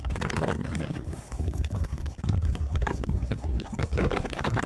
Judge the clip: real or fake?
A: fake